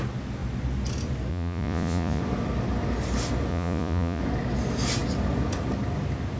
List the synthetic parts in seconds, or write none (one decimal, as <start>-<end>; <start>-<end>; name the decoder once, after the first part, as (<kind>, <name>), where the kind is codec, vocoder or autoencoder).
1.3-2.2 (vocoder, Vocos); 3.5-4.2

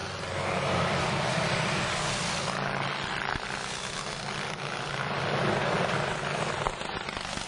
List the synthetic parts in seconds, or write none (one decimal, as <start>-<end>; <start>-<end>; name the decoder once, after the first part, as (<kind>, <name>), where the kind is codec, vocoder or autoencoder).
none

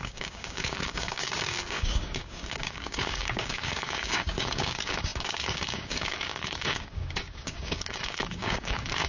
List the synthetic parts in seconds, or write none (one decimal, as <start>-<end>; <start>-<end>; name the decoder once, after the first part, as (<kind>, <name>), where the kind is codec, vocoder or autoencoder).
0.0-9.1 (codec, DAC)

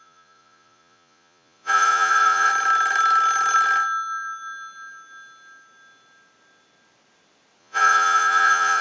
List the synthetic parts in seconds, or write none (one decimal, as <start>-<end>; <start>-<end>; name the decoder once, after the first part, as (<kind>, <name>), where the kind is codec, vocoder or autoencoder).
0.0-2.5 (vocoder, Vocos); 7.6-8.8

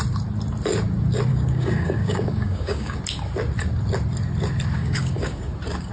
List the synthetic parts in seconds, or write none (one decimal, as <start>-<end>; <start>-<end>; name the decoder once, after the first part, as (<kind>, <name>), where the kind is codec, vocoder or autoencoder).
1.3-3.0 (codec, DAC); 4.8-5.5